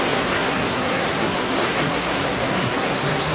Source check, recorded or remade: remade